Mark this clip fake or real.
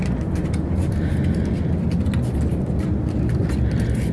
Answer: real